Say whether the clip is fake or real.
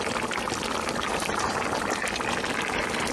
real